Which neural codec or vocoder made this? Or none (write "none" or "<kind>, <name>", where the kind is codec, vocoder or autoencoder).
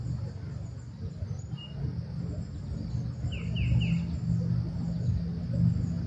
none